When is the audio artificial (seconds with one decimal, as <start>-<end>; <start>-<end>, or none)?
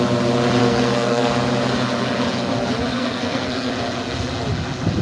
0.6-1.3; 2.9-3.7